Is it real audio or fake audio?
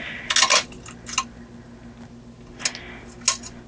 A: real